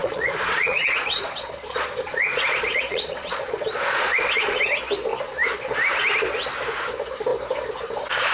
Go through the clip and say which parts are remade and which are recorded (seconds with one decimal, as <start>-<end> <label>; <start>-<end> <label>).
0.0-4.6 remade; 4.6-8.3 recorded